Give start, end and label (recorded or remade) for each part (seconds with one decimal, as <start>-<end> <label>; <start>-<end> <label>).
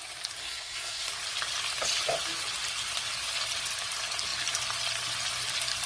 0.0-0.4 recorded; 0.4-1.1 remade; 1.1-5.9 recorded